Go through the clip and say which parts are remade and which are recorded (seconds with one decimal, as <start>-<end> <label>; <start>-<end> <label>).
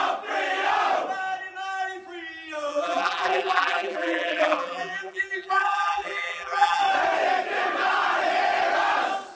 0.0-2.7 recorded; 2.7-6.8 remade; 6.8-9.3 recorded